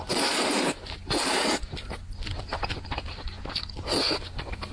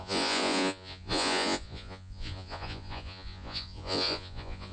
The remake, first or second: second